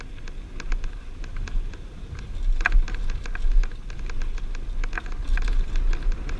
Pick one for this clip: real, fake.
real